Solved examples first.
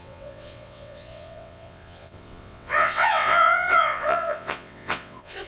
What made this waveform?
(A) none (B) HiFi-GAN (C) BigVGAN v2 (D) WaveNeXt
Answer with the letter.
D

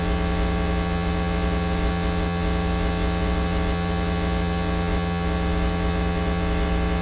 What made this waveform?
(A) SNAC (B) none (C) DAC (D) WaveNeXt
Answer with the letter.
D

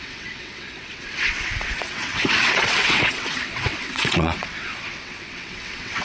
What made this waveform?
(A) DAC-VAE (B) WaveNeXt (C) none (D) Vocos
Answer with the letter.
B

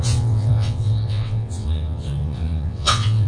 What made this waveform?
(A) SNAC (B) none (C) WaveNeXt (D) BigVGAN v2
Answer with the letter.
C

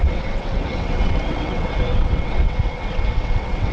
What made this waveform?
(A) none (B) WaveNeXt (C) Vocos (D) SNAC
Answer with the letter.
B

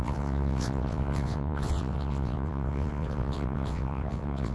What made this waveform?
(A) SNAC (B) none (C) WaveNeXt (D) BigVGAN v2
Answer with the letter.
C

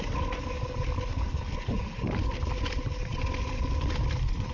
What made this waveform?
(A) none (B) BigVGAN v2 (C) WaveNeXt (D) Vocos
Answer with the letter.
A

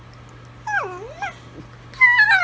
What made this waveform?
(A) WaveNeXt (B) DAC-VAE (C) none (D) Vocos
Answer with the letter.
C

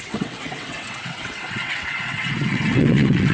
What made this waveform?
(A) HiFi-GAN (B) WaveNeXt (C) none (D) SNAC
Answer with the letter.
B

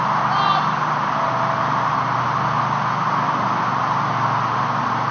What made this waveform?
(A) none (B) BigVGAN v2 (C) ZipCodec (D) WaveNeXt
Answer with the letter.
A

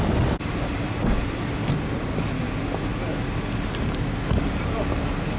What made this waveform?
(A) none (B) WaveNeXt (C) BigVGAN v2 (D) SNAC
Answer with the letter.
A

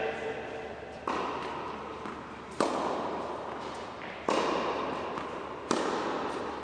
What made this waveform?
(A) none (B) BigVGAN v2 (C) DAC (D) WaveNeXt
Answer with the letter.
A